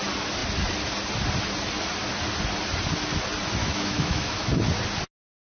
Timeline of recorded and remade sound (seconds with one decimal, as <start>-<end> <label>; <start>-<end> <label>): 0.0-3.6 recorded; 3.6-4.5 remade; 4.5-5.5 recorded